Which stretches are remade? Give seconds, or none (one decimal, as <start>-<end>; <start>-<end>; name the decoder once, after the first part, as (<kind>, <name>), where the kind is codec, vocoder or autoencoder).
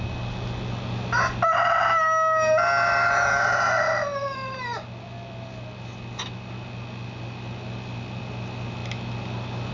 none